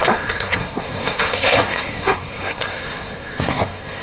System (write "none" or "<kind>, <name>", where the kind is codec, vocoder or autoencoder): codec, SNAC